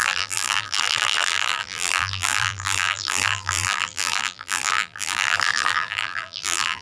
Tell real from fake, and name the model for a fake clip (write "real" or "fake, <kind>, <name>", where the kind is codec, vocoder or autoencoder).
fake, vocoder, BigVGAN v2